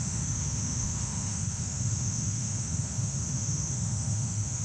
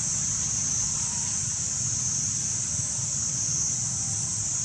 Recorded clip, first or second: second